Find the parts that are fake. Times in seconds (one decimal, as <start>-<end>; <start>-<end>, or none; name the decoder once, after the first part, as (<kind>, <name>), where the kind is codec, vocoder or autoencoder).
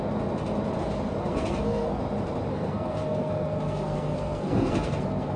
1.2-2.0 (codec, SNAC); 2.5-5.4